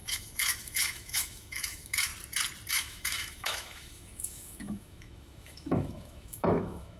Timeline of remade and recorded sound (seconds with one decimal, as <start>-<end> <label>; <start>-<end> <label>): 0.0-2.1 remade; 2.1-2.7 recorded; 2.7-7.0 remade